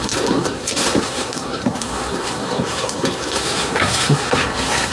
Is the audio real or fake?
fake